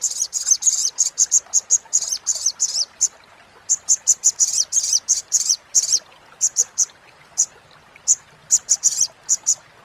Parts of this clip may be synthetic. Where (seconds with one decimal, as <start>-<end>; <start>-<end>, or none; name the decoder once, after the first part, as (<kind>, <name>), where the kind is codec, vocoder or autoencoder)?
5.2-5.7 (vocoder, BigVGAN v2)